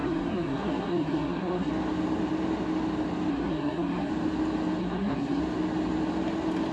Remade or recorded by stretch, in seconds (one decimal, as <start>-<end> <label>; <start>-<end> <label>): 0.0-1.7 remade; 1.7-3.3 recorded; 3.3-4.1 remade; 4.1-4.8 recorded; 4.8-5.4 remade; 5.4-6.7 recorded